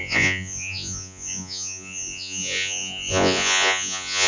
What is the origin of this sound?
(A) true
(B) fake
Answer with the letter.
B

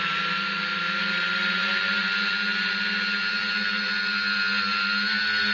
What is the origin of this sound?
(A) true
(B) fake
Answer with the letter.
A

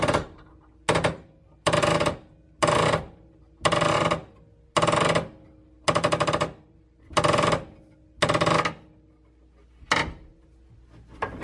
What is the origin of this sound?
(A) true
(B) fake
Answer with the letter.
A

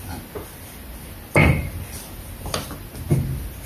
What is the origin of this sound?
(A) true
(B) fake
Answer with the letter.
A